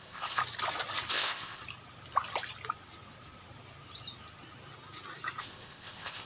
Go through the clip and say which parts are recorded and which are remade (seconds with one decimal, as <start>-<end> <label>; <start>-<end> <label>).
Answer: 0.0-0.4 remade; 0.4-1.1 recorded; 1.1-1.6 remade; 1.6-5.4 recorded; 5.4-6.3 remade